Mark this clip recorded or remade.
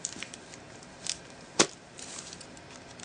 recorded